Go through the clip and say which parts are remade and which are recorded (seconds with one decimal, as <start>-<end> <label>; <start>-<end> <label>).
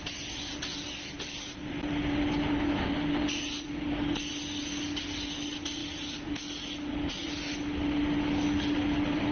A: 0.0-9.3 recorded